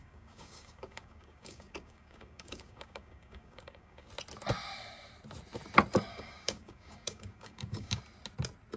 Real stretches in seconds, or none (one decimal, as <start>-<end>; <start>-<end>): 4.1-6.1; 8.0-8.8